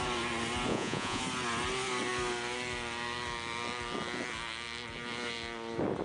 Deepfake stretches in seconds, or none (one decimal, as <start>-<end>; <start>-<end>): 0.7-1.2